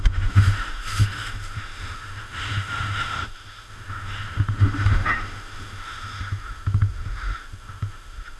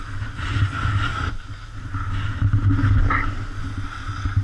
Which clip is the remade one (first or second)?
first